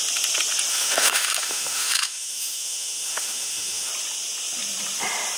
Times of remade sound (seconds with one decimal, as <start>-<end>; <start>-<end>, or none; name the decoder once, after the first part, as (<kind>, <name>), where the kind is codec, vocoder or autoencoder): 0.7-3.9 (autoencoder, DAC-VAE)